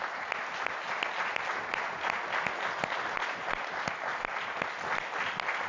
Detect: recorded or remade recorded